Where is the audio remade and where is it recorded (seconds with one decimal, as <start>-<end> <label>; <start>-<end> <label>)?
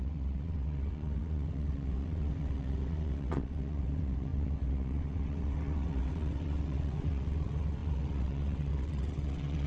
0.0-9.7 remade